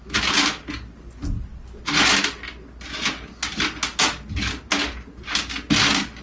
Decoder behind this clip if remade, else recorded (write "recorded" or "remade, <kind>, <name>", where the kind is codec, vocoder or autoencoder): recorded